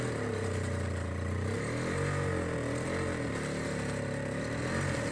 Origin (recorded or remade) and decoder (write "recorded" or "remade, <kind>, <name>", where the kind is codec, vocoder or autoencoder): recorded